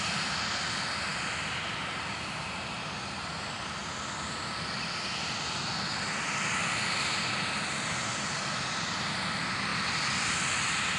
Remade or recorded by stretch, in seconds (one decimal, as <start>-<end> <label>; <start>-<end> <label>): 0.0-11.0 recorded